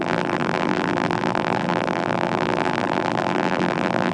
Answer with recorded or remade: remade